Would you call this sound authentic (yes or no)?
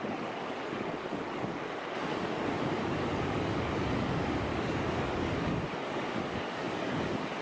no